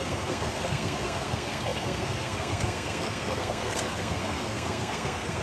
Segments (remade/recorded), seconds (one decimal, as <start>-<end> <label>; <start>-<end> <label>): 0.0-5.4 remade